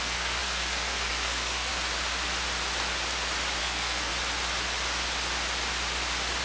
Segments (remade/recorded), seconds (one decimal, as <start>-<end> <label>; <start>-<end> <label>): 0.0-1.7 remade; 1.7-3.6 recorded; 3.6-4.1 remade; 4.1-6.4 recorded